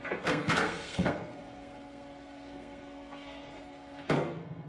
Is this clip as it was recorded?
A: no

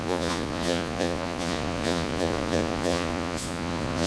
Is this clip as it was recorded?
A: no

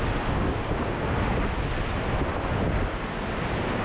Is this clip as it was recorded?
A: yes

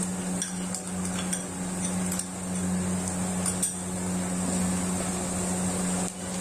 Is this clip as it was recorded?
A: yes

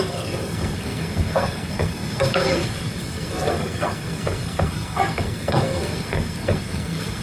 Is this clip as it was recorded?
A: no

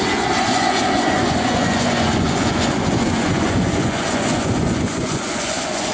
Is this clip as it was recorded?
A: no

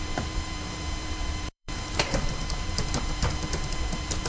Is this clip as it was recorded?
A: no